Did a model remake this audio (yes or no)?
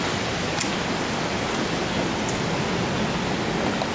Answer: no